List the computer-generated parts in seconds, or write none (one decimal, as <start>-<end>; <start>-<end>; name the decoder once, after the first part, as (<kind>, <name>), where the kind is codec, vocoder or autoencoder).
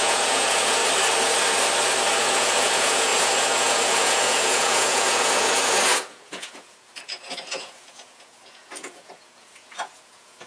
0.0-0.8 (vocoder, Vocos); 2.1-10.5